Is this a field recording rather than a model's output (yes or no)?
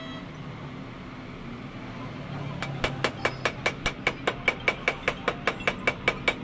yes